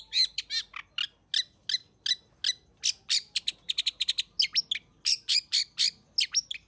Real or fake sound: real